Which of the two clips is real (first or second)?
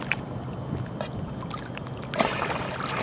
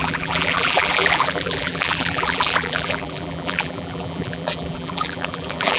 first